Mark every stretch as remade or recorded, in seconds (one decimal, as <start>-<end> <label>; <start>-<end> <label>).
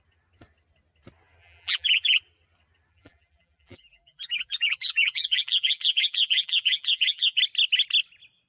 0.0-1.4 recorded; 1.4-2.2 remade; 2.2-2.9 recorded; 2.9-7.4 remade; 7.4-8.5 recorded